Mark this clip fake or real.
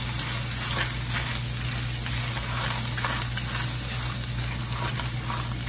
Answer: real